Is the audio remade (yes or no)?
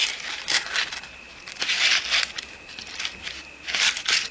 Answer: no